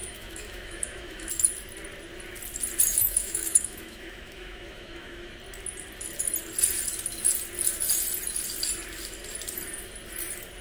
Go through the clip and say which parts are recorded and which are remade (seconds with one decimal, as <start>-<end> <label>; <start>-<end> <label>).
0.0-1.3 remade; 1.3-2.9 recorded; 2.9-5.3 remade; 5.3-10.6 recorded